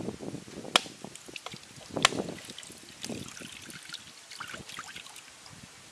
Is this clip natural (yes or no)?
yes